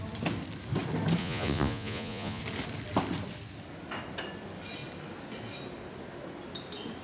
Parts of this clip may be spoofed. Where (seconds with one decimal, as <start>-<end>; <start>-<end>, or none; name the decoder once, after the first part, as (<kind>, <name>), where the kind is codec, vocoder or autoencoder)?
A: 1.2-2.4 (vocoder, Vocos)